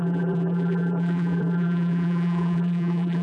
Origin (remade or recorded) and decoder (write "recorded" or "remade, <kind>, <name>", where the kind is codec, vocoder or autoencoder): remade, vocoder, BigVGAN v2